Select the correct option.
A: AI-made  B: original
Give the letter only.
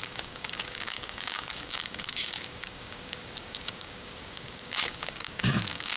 A